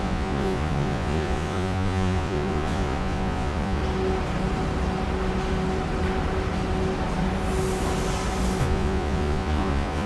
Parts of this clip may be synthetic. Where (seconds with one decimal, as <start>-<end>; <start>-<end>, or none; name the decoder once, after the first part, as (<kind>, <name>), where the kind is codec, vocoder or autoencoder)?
0.0-3.8 (vocoder, Vocos); 8.6-10.1

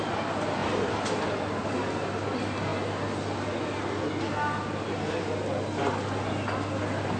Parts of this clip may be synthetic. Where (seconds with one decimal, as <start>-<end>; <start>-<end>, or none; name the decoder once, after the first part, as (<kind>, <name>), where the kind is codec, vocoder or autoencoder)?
0.6-1.2 (vocoder, BigVGAN v2)

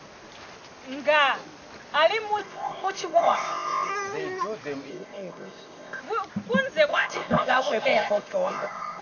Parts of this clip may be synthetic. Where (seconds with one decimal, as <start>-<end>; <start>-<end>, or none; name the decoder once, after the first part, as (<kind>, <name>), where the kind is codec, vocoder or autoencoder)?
2.4-3.9 (codec, ZipCodec); 4.9-6.0; 6.9-9.0